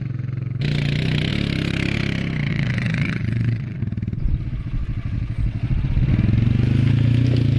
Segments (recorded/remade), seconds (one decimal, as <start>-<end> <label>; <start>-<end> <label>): 0.0-2.5 recorded; 2.5-3.8 remade; 3.8-7.6 recorded